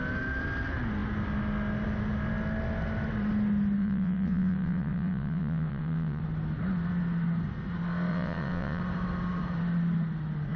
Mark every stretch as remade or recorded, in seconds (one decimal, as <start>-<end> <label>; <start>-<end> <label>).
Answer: 0.0-3.8 recorded; 3.8-6.2 remade; 6.2-8.1 recorded; 8.1-8.8 remade; 8.8-10.6 recorded